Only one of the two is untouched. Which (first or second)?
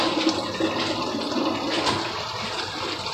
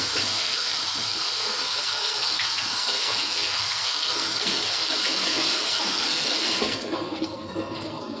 first